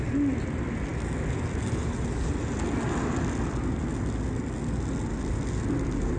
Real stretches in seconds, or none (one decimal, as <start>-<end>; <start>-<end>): 0.0-6.2